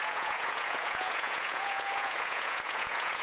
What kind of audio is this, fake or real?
fake